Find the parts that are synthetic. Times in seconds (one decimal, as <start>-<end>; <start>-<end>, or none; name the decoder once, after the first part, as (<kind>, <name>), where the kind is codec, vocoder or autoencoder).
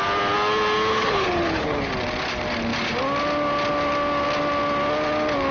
0.9-1.9 (codec, HILCodec)